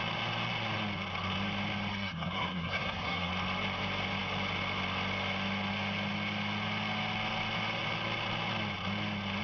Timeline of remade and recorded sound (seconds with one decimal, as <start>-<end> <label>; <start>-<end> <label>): 0.0-1.9 recorded; 1.9-3.3 remade; 3.3-9.4 recorded

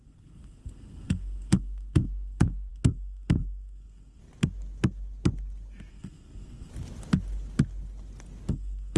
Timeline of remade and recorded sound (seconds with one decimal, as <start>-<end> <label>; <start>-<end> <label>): 0.0-4.2 remade; 4.2-5.9 recorded; 5.9-6.7 remade; 6.7-8.5 recorded; 8.5-9.0 remade

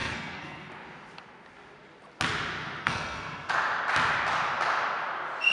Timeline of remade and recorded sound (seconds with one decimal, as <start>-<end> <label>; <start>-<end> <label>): 0.0-0.7 remade; 0.7-2.8 recorded; 2.8-3.5 remade; 3.5-5.5 recorded

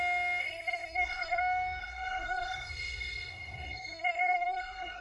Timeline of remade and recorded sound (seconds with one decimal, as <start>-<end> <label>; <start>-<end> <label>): 0.0-0.4 recorded; 0.4-1.4 remade; 1.4-1.8 recorded; 1.8-5.0 remade